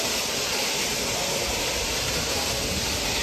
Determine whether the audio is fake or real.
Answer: real